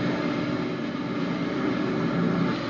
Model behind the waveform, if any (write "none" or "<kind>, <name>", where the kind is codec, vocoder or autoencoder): none